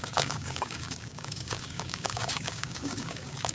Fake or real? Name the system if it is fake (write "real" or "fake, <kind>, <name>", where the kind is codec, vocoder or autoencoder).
fake, codec, DAC